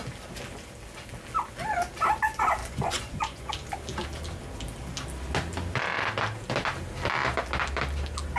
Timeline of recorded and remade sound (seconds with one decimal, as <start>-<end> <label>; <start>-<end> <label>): 0.0-2.6 recorded; 2.6-3.5 remade; 3.5-8.4 recorded